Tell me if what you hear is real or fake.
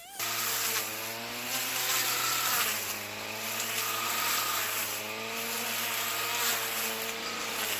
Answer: real